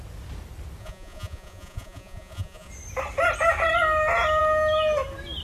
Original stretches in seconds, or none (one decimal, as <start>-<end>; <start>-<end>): 0.0-0.8; 2.7-5.4